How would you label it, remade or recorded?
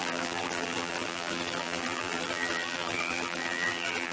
remade